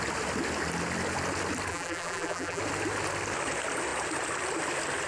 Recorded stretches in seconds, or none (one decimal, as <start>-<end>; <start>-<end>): 0.0-1.7; 2.6-5.1